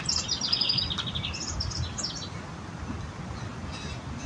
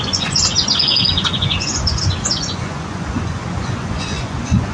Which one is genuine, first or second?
first